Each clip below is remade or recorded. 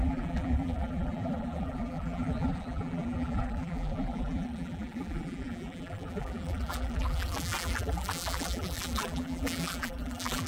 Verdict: remade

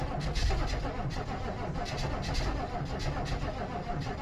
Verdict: recorded